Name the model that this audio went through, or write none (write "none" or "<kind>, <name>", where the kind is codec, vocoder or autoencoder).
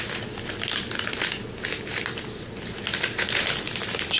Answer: none